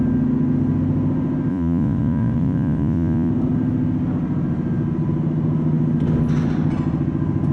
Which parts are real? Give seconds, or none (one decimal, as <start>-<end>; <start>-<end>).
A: 0.0-1.5; 3.3-7.5

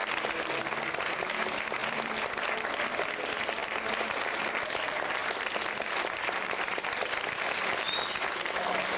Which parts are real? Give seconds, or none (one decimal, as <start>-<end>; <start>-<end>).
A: 0.0-1.8; 2.4-9.0

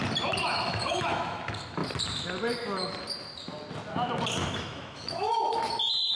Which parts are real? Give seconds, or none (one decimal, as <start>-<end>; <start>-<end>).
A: 0.0-0.4; 1.4-4.4; 5.7-6.2

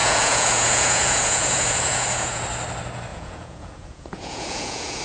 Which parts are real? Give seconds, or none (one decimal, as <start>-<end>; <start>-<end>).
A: 2.4-3.1

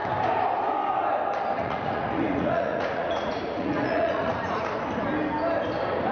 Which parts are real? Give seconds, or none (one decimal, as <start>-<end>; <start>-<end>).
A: 0.0-1.6; 4.7-6.1

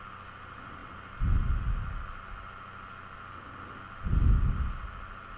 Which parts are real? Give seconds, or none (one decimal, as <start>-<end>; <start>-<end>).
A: 0.0-5.4